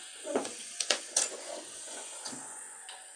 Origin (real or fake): fake